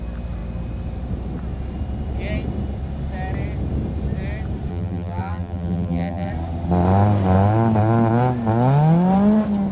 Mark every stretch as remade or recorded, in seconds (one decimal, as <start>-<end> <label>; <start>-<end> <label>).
0.0-4.7 recorded; 4.7-6.3 remade; 6.3-9.7 recorded